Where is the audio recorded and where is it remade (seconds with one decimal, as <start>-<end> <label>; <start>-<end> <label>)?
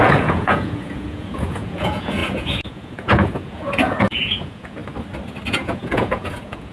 0.0-4.8 remade; 4.8-5.5 recorded; 5.5-6.7 remade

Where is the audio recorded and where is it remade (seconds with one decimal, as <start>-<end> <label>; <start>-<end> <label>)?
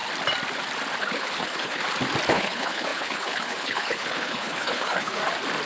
0.0-1.0 recorded; 1.0-1.8 remade; 1.8-2.3 recorded; 2.3-5.2 remade; 5.2-5.7 recorded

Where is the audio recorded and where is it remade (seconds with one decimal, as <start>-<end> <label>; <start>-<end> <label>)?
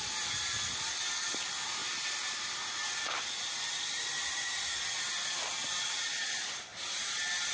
0.0-7.5 recorded